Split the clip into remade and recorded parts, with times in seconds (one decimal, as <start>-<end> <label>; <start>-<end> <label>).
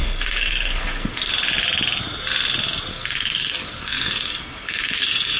0.0-1.3 remade; 1.3-2.9 recorded; 2.9-5.4 remade